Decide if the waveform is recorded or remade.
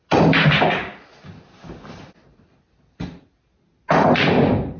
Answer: recorded